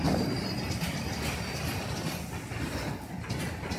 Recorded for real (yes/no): yes